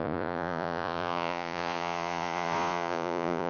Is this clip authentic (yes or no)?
no